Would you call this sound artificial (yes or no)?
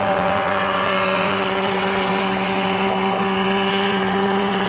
yes